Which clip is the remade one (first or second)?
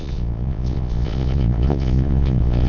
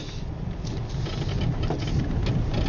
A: first